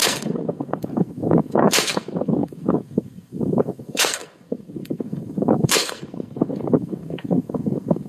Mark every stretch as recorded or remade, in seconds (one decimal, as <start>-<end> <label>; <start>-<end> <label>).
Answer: 0.0-8.1 remade